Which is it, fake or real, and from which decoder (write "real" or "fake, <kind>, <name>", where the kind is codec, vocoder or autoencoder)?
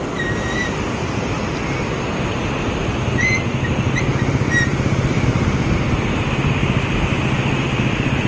real